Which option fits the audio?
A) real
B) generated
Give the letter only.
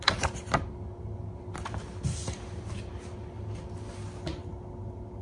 A